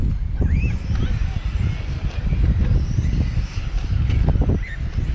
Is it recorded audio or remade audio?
recorded